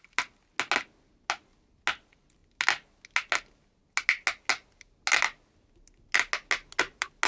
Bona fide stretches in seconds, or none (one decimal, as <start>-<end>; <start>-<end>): 0.0-7.3

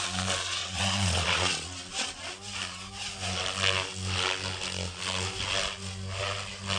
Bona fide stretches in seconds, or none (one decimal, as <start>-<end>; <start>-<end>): 0.0-0.6; 2.3-6.8

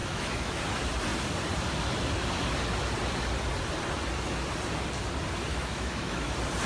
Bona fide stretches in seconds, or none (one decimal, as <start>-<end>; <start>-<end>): 0.6-5.5; 6.3-6.7

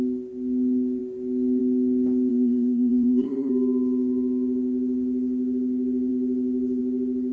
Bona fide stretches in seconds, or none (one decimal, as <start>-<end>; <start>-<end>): 0.0-2.3; 3.5-7.3

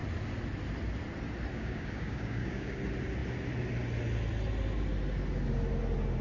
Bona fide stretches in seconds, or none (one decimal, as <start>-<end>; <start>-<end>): 0.0-1.5; 2.8-6.2

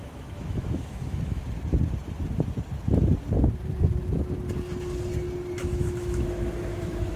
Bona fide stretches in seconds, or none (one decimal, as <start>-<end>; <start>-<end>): 1.4-5.6